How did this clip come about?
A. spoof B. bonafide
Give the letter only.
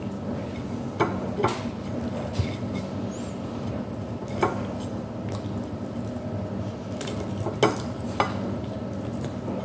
B